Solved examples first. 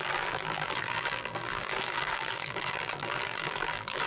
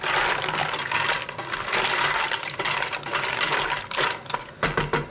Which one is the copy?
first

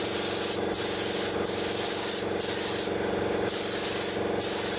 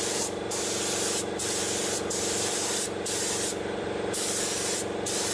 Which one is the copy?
second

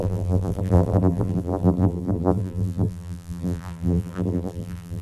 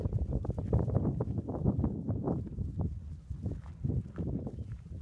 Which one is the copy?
first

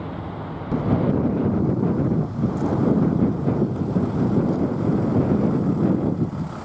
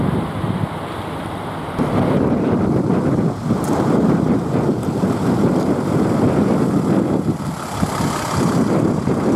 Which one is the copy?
second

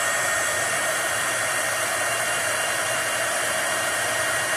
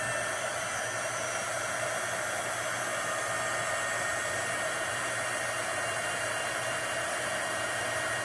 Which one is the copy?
first